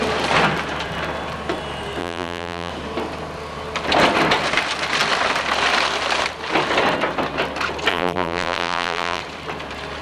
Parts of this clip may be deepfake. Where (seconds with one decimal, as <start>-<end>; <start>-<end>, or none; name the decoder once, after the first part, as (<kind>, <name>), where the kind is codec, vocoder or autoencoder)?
2.0-2.7 (vocoder, BigVGAN v2); 7.9-9.2